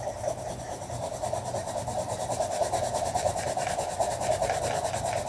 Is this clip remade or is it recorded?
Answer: recorded